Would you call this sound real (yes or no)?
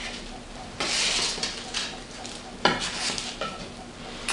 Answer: yes